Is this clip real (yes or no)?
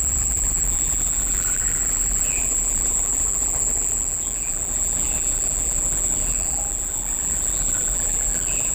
no